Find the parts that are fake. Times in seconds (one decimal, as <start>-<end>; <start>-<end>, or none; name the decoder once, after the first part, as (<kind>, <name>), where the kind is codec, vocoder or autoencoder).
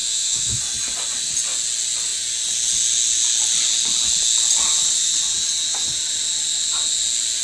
0.0-0.6 (autoencoder, DAC-VAE)